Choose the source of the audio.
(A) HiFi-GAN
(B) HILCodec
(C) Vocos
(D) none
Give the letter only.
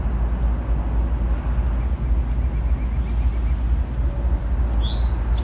D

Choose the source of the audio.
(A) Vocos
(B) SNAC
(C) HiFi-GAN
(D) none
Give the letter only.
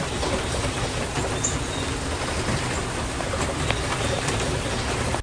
D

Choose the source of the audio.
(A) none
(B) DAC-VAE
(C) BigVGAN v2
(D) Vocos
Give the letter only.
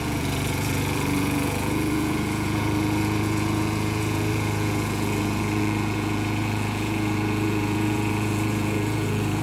D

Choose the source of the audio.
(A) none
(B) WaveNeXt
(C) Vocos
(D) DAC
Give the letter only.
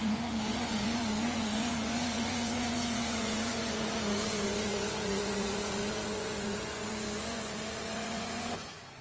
C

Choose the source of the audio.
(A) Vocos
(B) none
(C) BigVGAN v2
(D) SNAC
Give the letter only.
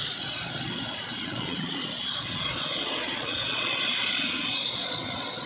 A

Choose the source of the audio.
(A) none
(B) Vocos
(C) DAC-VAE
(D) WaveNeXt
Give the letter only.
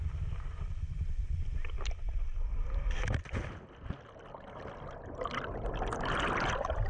A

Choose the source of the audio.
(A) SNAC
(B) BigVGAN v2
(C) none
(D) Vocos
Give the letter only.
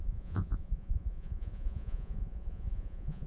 D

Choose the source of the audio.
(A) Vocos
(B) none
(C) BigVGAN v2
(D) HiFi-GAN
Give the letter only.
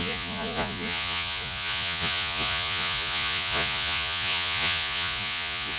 A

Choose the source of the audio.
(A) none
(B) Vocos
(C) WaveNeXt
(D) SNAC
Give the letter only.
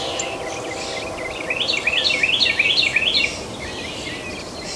A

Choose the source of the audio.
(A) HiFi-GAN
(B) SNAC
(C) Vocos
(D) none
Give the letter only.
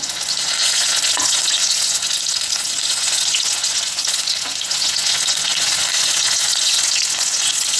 C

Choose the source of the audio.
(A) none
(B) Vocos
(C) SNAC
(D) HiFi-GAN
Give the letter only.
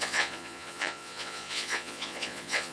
B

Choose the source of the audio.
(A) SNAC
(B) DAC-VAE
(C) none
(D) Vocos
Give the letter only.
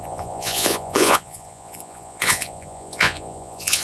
D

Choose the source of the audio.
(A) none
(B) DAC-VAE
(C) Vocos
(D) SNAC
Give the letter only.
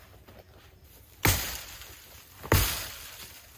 A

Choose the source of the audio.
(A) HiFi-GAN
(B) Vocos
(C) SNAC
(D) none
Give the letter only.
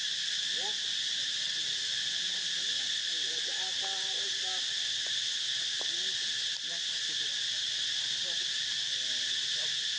D